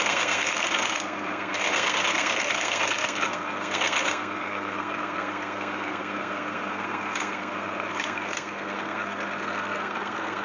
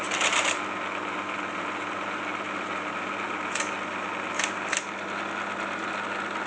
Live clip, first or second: second